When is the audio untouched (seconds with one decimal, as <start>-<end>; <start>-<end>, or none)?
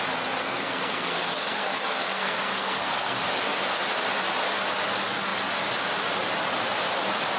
0.0-0.4; 3.2-7.4